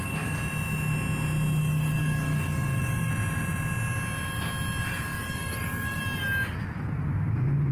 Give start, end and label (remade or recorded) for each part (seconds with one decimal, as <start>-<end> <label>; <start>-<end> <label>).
0.0-1.6 recorded; 1.6-3.1 remade; 3.1-5.1 recorded; 5.1-6.0 remade; 6.0-7.7 recorded